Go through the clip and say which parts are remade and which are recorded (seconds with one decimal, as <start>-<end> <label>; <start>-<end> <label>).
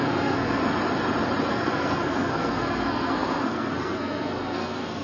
0.0-0.6 remade; 0.6-1.5 recorded; 1.5-5.0 remade